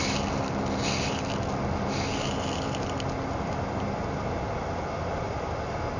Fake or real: real